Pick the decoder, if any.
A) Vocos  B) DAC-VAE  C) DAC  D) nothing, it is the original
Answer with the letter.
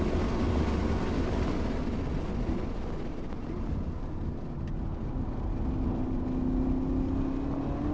D